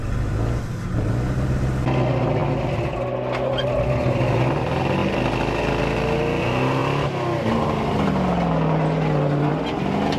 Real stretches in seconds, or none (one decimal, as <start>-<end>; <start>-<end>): 0.0-10.2